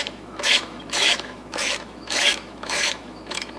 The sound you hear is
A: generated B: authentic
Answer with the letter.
A